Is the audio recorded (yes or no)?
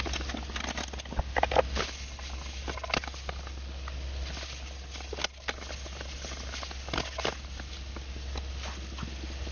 yes